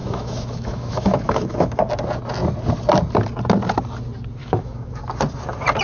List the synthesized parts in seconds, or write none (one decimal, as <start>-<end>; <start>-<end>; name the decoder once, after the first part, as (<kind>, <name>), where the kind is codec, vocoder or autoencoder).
0.0-1.9 (autoencoder, DAC-VAE); 4.4-5.0